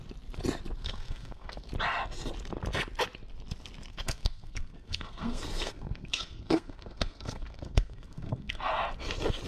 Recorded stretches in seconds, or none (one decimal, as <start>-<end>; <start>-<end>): 0.0-0.8; 1.7-3.9; 8.7-9.5